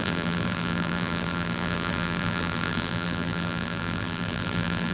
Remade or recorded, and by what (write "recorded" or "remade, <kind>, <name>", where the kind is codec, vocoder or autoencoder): remade, vocoder, BigVGAN v2